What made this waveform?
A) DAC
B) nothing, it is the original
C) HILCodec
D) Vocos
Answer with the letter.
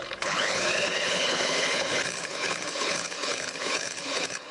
C